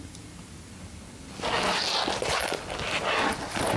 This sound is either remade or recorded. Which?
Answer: recorded